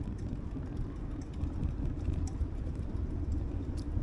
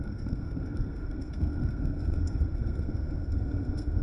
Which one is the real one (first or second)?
first